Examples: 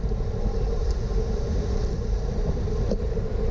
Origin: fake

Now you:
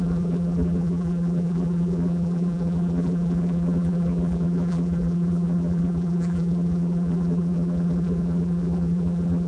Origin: fake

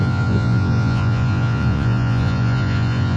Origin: fake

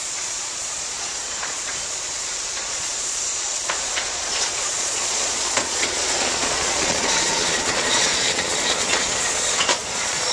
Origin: fake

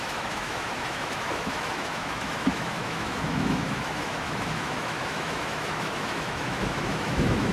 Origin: fake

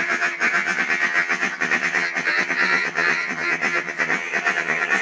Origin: fake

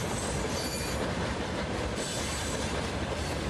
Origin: fake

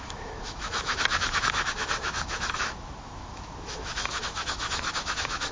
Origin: fake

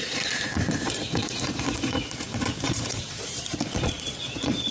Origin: fake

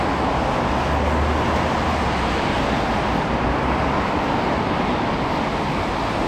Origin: real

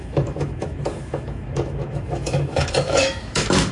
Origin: fake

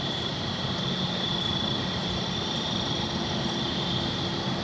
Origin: real